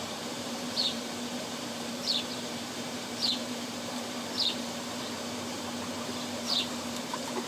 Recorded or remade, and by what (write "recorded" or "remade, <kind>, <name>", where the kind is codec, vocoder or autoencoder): remade, vocoder, BigVGAN v2